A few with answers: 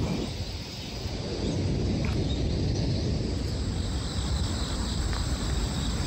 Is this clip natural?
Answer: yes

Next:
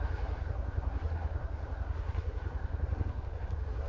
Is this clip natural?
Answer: no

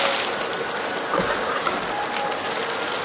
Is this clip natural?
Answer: yes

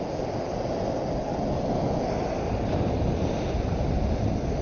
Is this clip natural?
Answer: yes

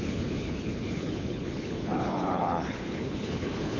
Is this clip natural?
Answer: no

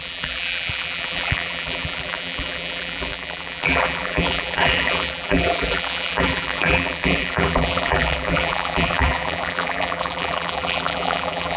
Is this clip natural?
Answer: no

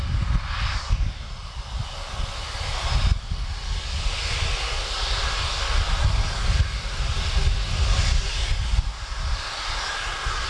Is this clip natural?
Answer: yes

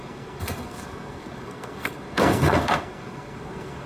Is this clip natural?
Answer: no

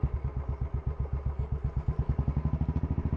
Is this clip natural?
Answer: yes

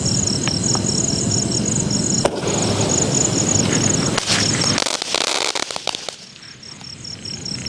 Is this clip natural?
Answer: yes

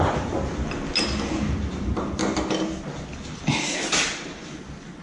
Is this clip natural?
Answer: yes